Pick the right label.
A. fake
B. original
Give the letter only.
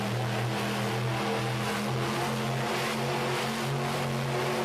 B